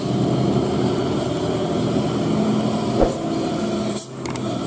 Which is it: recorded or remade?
recorded